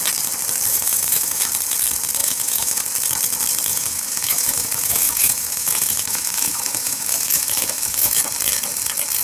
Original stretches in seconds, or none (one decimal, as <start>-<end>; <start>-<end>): 0.0-0.7; 1.5-2.2; 2.8-3.7; 8.2-9.2